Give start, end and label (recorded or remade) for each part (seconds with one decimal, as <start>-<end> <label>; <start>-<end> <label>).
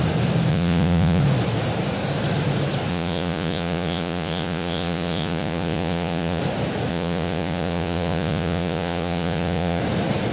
0.0-0.5 recorded; 0.5-1.2 remade; 1.2-2.9 recorded; 2.9-6.4 remade; 6.4-6.9 recorded; 6.9-9.8 remade; 9.8-10.3 recorded